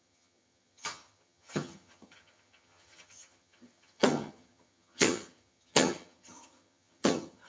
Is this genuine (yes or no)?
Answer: no